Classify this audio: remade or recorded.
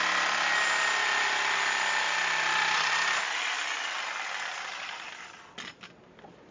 recorded